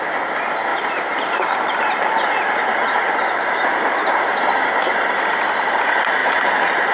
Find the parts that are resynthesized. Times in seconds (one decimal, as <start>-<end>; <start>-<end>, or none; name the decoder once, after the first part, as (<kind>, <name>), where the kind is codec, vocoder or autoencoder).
0.7-4.4 (vocoder, BigVGAN v2); 6.2-6.9